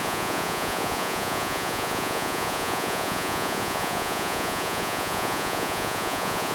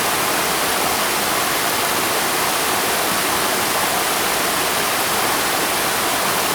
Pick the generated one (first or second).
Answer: first